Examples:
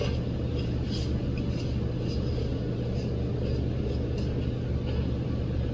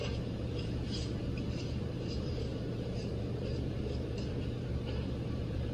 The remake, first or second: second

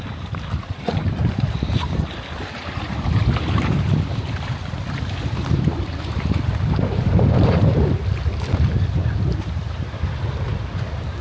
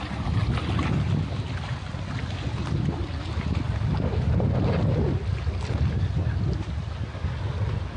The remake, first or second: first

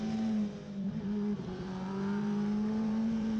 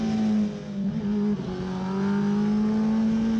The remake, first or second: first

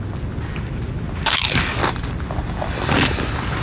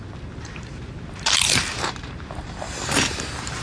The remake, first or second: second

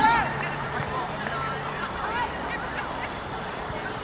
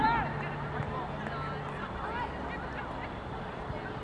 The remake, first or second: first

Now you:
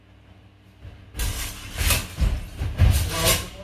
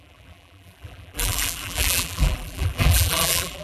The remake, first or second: second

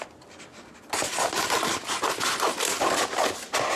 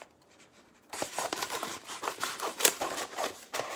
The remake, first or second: second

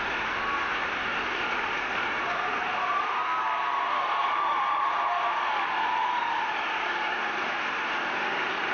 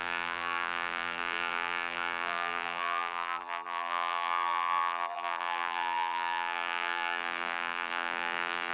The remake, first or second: second